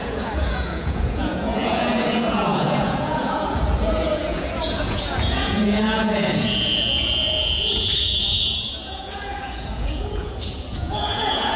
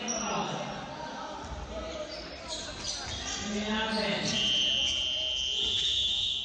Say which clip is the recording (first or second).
second